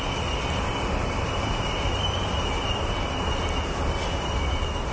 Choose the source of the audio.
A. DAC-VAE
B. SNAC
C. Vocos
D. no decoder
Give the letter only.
D